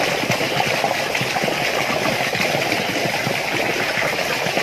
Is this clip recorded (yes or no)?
yes